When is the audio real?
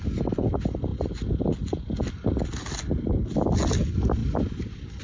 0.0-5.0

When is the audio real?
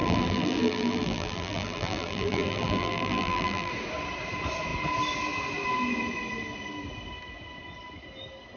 3.7-8.6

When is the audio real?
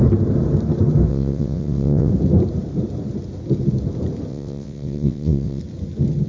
0.0-1.1; 2.1-4.3; 5.6-6.3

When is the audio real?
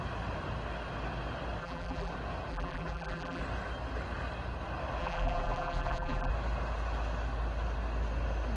0.0-1.6; 2.1-2.5; 3.4-5.0; 6.3-8.6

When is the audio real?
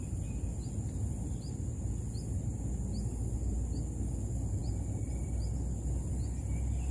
0.0-6.9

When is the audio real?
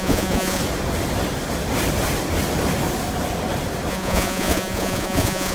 0.6-3.9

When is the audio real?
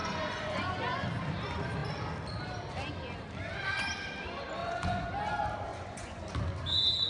1.0-4.6; 5.1-5.7; 6.2-7.1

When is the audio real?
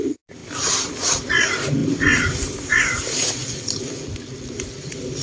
0.0-5.2